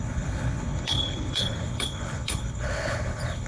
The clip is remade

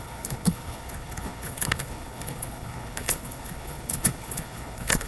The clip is remade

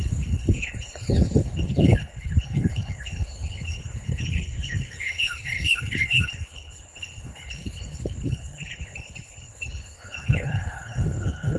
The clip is remade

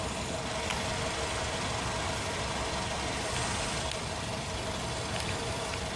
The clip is recorded